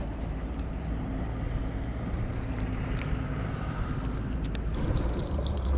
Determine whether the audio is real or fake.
fake